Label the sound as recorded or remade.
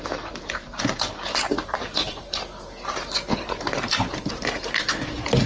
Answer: remade